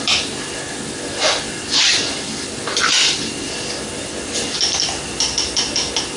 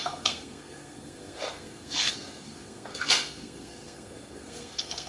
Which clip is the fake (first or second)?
second